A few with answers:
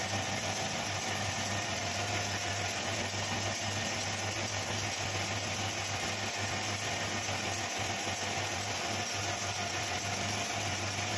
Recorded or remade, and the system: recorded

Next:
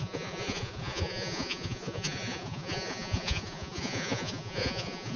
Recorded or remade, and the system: remade, vocoder, Vocos